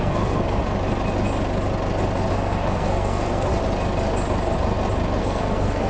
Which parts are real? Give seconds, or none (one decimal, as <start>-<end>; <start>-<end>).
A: 0.6-2.3; 3.5-5.2